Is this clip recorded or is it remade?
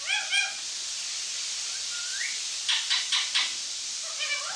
recorded